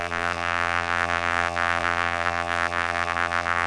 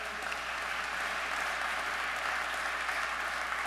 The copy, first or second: first